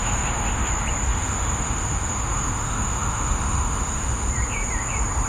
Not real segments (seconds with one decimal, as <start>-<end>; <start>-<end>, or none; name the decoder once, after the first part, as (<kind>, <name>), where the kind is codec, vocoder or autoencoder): 0.0-0.7 (autoencoder, DAC-VAE); 1.1-4.3